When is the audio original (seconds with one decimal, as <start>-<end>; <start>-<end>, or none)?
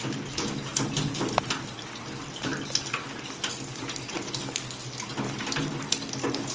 0.0-6.5